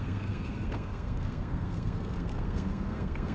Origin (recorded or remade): remade